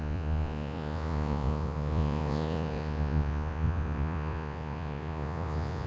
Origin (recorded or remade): remade